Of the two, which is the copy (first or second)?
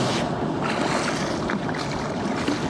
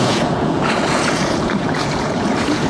second